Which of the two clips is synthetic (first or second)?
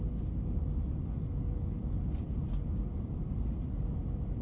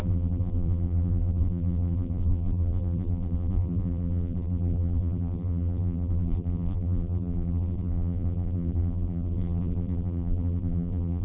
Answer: second